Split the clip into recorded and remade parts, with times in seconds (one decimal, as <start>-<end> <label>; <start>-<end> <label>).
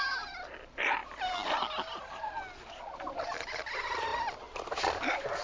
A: 0.0-5.4 recorded